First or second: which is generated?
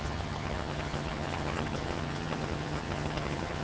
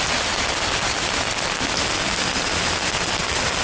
first